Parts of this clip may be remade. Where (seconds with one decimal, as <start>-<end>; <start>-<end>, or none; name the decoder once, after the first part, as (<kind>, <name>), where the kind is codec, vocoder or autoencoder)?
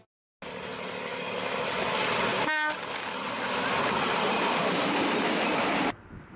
none